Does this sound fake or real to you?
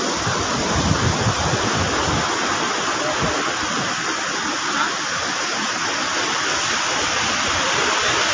real